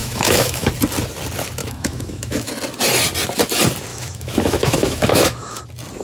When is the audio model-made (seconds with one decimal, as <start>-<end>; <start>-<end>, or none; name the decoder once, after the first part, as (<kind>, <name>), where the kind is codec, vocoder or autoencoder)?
0.0-0.7 (autoencoder, DAC-VAE); 1.6-2.5; 3.9-5.6